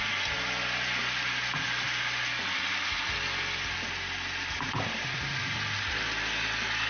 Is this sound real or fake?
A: real